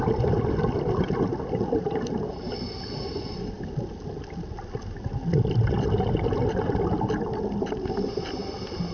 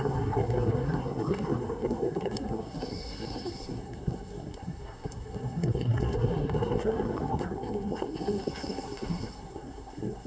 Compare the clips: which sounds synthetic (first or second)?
second